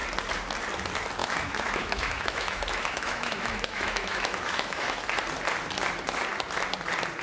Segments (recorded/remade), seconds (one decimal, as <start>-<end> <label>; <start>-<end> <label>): 0.0-1.2 recorded; 1.2-5.0 remade; 5.0-7.2 recorded